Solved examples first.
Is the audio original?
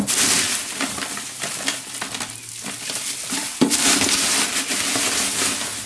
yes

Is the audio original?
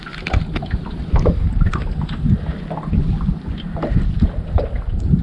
yes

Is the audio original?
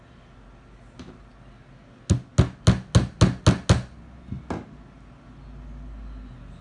yes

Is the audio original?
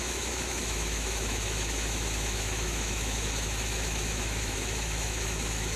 no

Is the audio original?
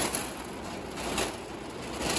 yes